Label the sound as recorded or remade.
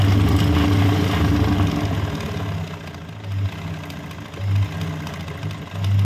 recorded